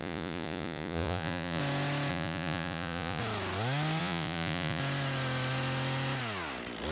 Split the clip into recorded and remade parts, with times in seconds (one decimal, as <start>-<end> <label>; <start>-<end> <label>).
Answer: 0.0-1.6 remade; 1.6-2.1 recorded; 2.1-3.2 remade; 3.2-4.0 recorded; 4.0-4.8 remade; 4.8-6.9 recorded